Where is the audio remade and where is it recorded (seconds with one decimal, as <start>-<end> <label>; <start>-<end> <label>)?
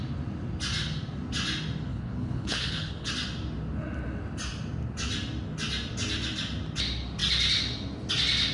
0.0-1.9 recorded; 1.9-3.1 remade; 3.1-8.5 recorded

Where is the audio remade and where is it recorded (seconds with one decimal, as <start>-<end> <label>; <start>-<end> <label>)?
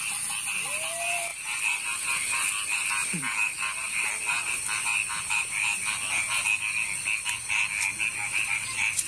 0.0-9.1 recorded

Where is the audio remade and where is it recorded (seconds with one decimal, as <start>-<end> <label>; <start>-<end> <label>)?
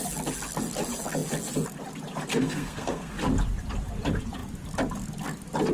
0.0-2.3 recorded; 2.3-3.1 remade; 3.1-5.7 recorded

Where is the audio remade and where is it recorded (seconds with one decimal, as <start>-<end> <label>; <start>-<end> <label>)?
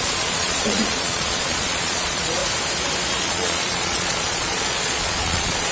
0.0-2.4 remade; 2.4-3.2 recorded; 3.2-5.7 remade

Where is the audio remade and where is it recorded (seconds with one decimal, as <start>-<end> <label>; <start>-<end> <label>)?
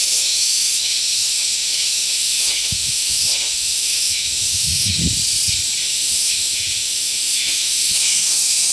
0.0-5.0 remade; 5.0-5.8 recorded; 5.8-8.7 remade